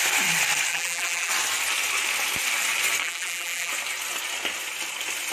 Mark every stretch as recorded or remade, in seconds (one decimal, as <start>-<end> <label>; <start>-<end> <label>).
0.0-0.7 recorded; 0.7-1.3 remade; 1.3-3.0 recorded; 3.0-3.7 remade; 3.7-5.3 recorded